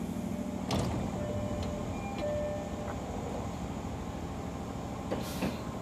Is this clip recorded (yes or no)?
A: yes